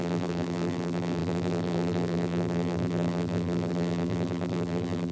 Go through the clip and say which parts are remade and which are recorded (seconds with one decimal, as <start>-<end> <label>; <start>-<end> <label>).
0.0-5.1 remade